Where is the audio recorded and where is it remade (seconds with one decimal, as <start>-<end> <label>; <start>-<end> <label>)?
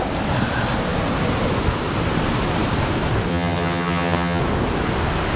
0.0-3.3 recorded; 3.3-4.4 remade; 4.4-5.4 recorded